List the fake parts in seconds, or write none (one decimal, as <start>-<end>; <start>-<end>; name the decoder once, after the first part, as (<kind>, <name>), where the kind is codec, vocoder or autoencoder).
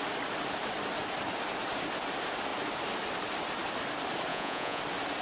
4.3-4.8 (vocoder, Vocos)